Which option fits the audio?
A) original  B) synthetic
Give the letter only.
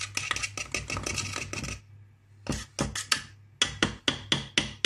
A